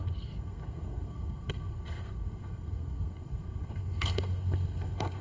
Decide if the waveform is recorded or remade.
remade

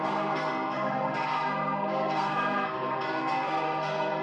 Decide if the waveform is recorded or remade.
remade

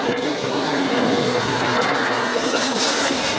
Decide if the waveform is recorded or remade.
remade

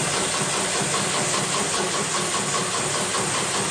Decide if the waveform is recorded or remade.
recorded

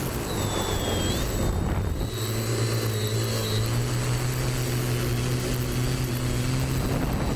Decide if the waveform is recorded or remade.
recorded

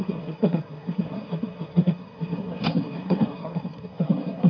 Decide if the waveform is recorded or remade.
remade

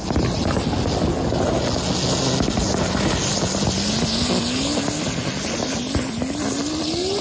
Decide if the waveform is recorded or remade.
recorded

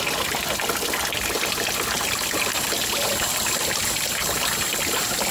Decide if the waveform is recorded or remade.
recorded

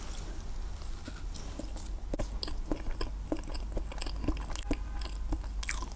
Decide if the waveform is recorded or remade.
recorded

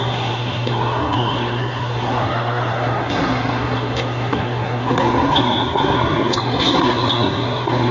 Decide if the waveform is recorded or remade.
remade